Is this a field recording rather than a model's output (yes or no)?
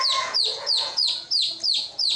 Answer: no